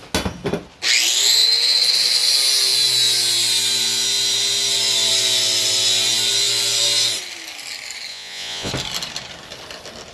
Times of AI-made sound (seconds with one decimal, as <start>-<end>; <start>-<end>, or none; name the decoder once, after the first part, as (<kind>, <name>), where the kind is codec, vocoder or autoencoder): 8.1-8.7 (vocoder, Vocos)